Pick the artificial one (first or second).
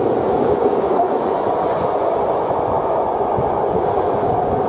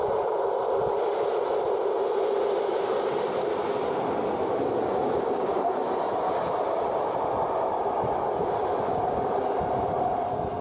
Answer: first